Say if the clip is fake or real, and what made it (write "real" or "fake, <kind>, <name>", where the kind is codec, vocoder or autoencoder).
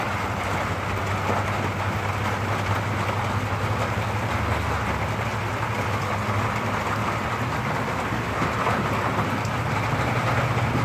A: real